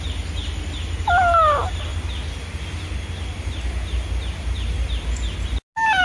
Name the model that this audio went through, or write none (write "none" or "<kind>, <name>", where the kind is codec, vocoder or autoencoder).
none